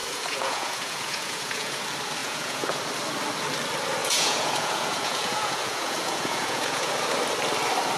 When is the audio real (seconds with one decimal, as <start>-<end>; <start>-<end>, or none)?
1.8-2.2; 2.8-4.0; 6.9-8.0